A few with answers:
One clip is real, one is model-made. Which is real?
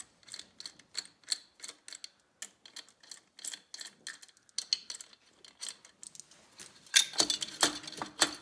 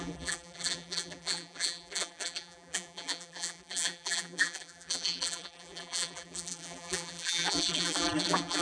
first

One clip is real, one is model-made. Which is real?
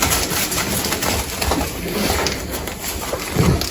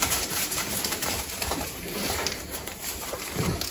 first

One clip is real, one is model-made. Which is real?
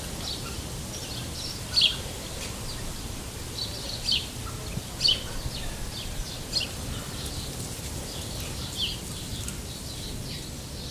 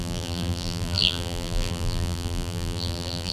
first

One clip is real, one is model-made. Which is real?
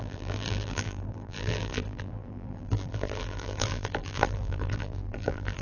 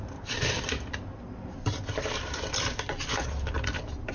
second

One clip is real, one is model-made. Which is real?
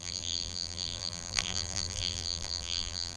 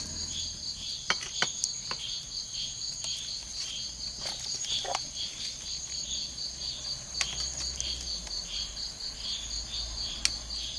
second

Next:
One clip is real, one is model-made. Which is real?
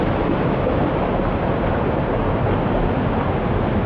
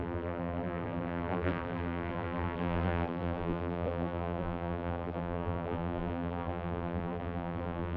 first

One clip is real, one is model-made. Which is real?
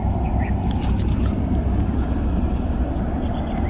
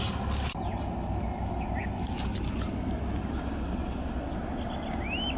second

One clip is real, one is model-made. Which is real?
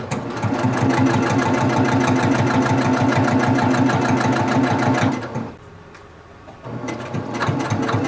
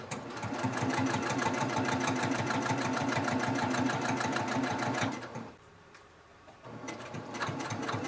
first